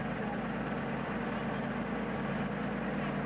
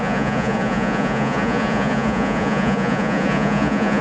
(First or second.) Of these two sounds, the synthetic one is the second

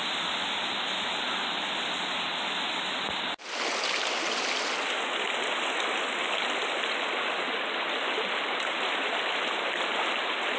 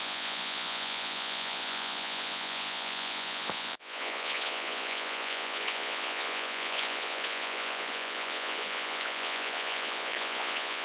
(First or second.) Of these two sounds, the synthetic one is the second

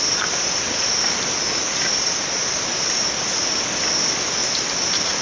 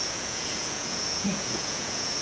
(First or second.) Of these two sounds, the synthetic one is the second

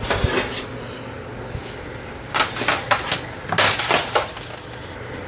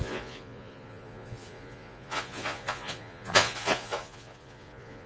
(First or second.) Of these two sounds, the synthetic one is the second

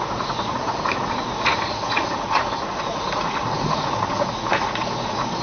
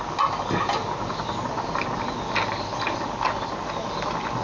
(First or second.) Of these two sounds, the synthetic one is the first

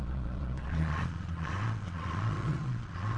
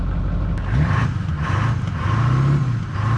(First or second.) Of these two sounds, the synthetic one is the first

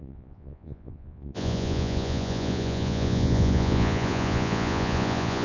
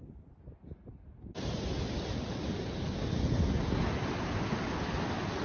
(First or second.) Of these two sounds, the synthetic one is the first